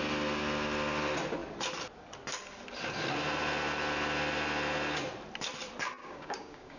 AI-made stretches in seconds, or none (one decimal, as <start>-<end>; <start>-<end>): 6.0-6.8